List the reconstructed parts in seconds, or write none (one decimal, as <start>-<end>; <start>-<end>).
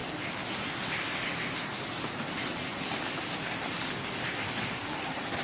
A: 1.3-2.7; 4.2-5.4